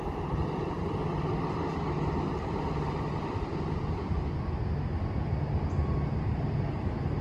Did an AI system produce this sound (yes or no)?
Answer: no